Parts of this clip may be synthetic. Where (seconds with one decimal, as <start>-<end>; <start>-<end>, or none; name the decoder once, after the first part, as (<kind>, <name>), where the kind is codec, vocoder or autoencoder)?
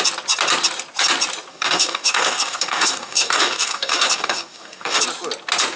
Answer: 1.5-5.0 (codec, DAC)